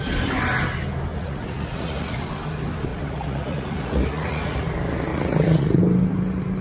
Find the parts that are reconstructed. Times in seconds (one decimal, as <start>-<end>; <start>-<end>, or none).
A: 1.1-2.3; 2.9-4.6; 5.1-5.8